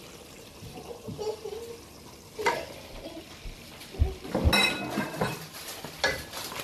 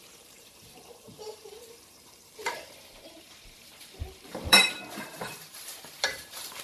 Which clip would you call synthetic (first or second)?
second